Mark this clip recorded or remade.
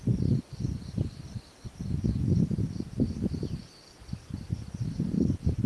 recorded